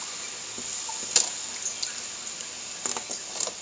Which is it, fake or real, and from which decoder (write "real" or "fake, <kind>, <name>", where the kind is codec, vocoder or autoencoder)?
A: real